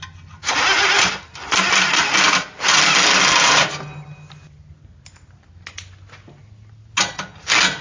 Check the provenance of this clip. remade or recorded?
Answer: recorded